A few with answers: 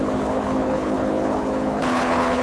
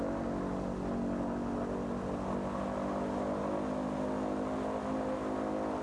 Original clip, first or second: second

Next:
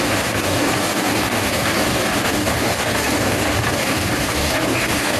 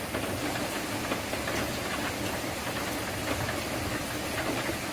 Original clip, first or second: second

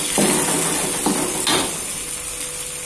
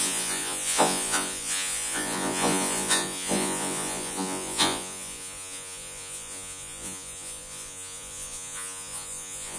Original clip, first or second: first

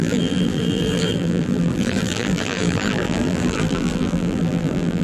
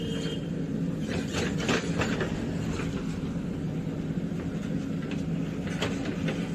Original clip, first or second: second